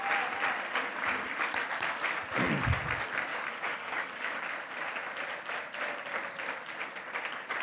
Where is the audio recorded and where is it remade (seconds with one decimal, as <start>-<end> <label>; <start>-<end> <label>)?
0.0-3.3 recorded; 3.3-4.4 remade; 4.4-7.6 recorded